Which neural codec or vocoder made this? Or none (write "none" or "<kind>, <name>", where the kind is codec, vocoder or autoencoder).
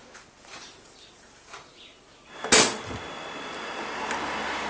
none